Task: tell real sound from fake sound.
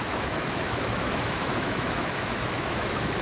fake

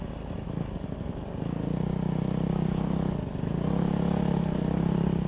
real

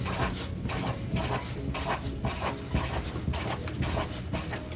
real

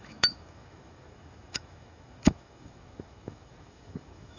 fake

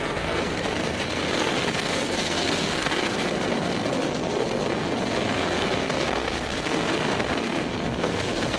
fake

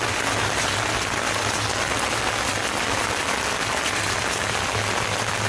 real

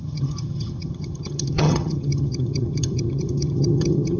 fake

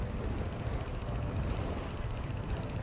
real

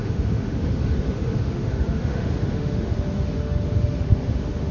fake